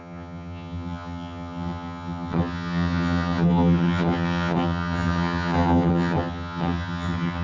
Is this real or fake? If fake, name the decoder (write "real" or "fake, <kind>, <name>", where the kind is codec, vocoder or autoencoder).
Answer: fake, vocoder, HiFi-GAN